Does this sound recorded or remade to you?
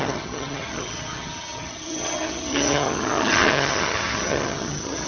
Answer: remade